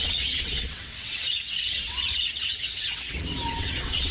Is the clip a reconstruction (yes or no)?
yes